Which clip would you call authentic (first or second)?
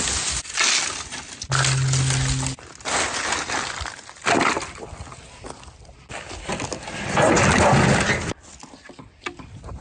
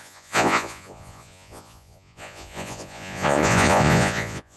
first